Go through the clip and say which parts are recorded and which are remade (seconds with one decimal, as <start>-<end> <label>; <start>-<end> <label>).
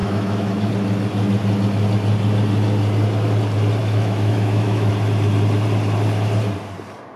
0.0-0.7 remade; 0.7-3.8 recorded; 3.8-4.9 remade; 4.9-7.2 recorded